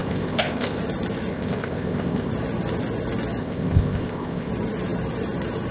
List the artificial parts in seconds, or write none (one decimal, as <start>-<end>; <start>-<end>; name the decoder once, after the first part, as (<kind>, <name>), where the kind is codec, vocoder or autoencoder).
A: 0.0-0.8 (codec, ZipCodec); 1.3-2.3; 3.4-4.5